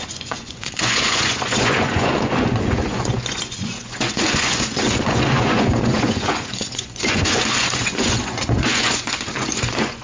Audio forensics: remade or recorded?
remade